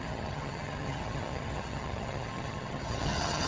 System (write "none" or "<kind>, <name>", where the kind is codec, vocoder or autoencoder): vocoder, HiFi-GAN